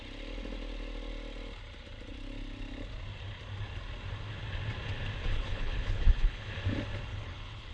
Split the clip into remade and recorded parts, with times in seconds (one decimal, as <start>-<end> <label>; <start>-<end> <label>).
0.0-5.3 recorded; 5.3-6.4 remade; 6.4-7.1 recorded; 7.1-7.7 remade